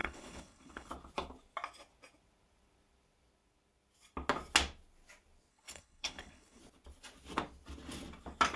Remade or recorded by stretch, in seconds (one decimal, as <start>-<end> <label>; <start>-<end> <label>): 0.0-0.9 remade; 0.9-5.5 recorded; 5.5-6.6 remade; 6.6-8.6 recorded